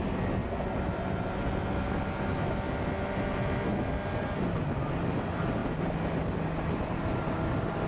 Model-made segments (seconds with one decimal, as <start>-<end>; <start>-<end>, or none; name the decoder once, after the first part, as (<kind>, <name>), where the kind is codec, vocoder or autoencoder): none